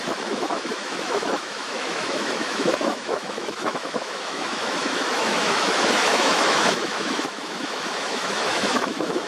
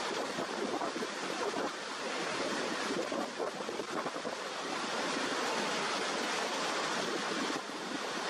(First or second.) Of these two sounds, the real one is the second